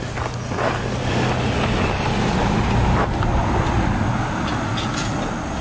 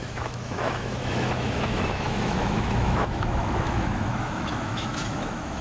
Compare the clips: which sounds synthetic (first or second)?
second